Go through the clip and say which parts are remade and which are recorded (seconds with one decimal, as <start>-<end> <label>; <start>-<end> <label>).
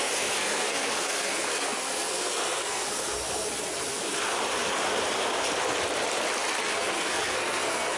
0.0-4.2 remade; 4.2-6.6 recorded; 6.6-8.0 remade